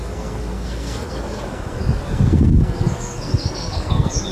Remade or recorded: remade